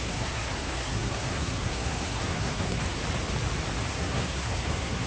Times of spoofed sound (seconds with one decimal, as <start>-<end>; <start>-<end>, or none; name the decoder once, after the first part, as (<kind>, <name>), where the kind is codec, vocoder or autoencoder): 0.0-3.0 (codec, SNAC); 3.9-5.1